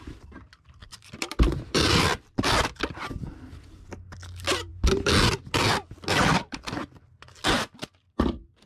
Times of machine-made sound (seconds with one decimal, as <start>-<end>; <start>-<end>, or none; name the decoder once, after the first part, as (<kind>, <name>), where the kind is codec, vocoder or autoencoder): 0.8-2.8 (vocoder, BigVGAN v2)